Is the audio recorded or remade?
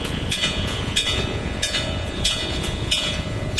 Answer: remade